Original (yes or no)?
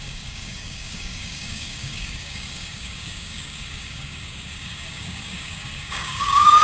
no